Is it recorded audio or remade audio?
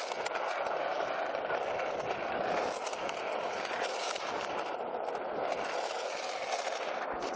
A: recorded